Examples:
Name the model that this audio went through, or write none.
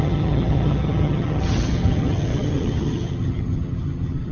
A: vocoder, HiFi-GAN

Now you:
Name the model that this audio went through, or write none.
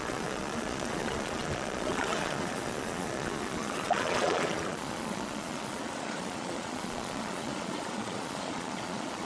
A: vocoder, Vocos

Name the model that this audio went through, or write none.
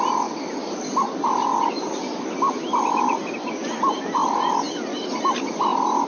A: none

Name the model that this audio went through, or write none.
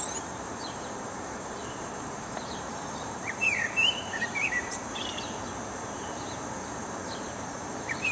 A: vocoder, BigVGAN v2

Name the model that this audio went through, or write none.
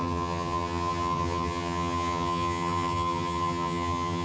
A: vocoder, HiFi-GAN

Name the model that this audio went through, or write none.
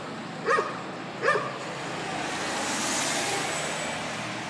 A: none